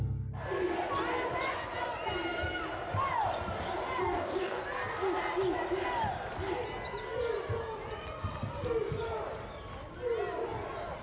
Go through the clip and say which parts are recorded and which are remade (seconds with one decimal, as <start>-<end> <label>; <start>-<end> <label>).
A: 0.0-4.0 recorded; 4.0-4.6 remade; 4.6-11.0 recorded